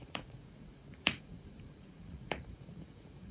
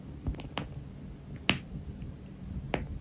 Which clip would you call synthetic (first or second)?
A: first